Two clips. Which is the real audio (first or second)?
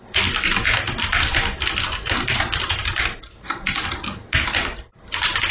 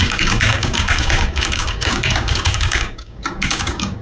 first